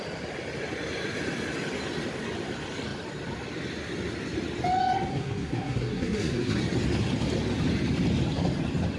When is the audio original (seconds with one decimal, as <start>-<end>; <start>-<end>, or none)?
0.0-5.1; 6.6-9.0